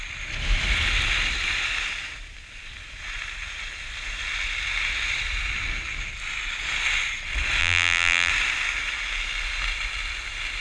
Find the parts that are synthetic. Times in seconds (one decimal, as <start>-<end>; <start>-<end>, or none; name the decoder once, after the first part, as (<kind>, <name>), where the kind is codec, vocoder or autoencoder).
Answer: 7.6-8.3 (vocoder, BigVGAN v2)